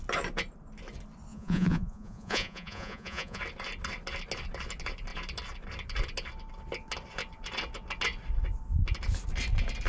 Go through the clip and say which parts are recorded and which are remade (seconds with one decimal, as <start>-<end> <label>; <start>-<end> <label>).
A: 0.0-1.3 recorded; 1.3-3.4 remade; 3.4-9.9 recorded